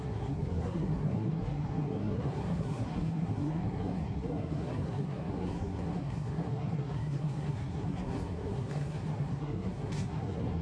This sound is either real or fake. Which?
fake